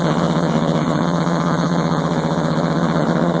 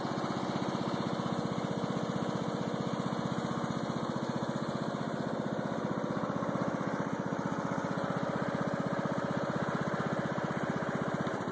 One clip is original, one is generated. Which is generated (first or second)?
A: first